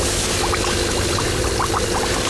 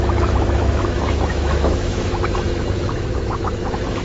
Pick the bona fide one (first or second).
first